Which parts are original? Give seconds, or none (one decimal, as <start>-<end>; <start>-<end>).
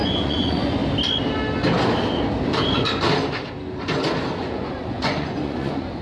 0.8-4.4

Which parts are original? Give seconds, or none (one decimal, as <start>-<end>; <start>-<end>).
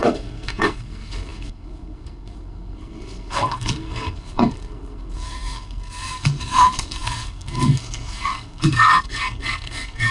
none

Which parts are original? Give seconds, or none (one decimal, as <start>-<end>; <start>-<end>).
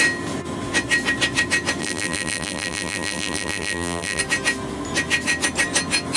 0.0-1.8; 4.2-6.2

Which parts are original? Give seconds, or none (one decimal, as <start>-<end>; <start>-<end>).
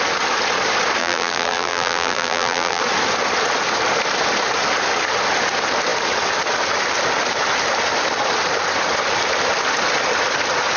0.0-1.0; 2.8-10.8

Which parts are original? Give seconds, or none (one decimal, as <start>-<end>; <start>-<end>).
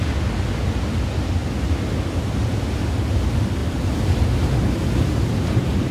0.0-3.6; 4.2-5.9